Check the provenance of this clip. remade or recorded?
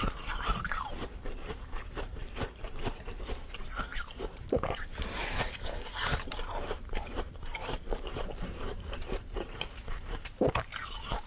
remade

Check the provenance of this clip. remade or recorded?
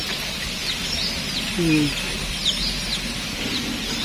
recorded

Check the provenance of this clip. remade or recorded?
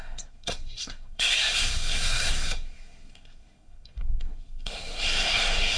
remade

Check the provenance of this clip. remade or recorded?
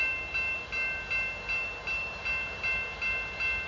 recorded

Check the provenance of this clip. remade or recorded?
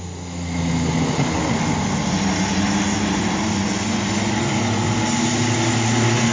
recorded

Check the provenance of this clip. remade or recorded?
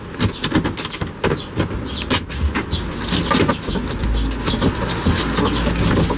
recorded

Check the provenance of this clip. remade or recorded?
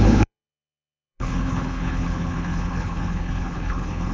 remade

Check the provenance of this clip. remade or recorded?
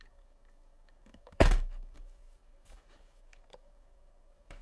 remade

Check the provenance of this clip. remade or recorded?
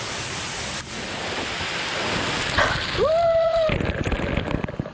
recorded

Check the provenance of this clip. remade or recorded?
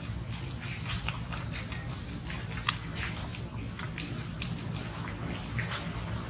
recorded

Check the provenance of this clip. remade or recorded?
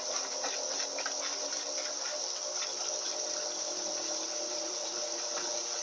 recorded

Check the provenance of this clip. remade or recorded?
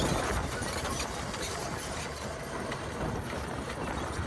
remade